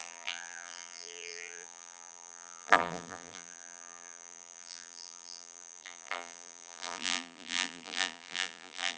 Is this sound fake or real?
fake